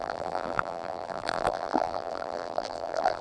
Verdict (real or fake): fake